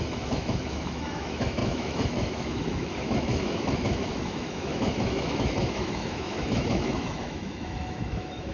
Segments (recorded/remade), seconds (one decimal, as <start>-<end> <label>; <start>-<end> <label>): 0.0-8.5 remade